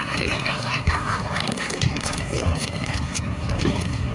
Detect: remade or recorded remade